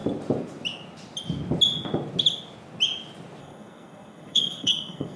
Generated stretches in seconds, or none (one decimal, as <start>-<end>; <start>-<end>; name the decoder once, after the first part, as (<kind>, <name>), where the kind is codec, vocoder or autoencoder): 3.4-5.2 (codec, SNAC)